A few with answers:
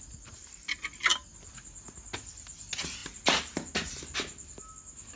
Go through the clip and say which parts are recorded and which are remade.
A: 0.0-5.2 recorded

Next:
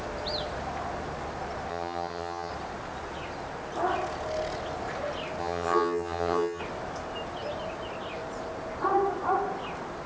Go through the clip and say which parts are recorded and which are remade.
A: 0.0-1.7 recorded; 1.7-2.5 remade; 2.5-5.4 recorded; 5.4-6.6 remade; 6.6-10.1 recorded

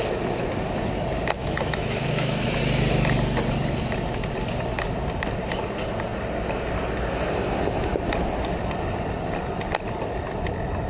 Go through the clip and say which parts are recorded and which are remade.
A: 0.0-1.4 recorded; 1.4-2.6 remade; 2.6-10.9 recorded

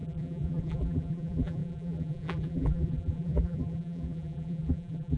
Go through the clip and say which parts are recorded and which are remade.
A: 0.0-5.2 remade